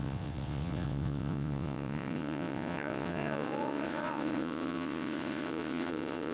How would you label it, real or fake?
fake